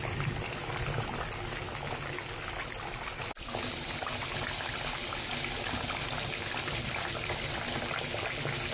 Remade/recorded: recorded